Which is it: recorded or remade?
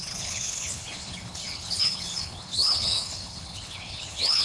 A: remade